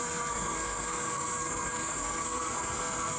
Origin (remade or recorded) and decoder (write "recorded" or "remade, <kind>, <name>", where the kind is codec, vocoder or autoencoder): remade, codec, SNAC